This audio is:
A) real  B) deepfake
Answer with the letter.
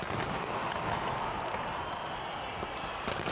A